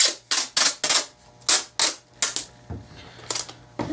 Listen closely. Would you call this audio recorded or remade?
recorded